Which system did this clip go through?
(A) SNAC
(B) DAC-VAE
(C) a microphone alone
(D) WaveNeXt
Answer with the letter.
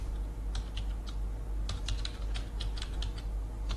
C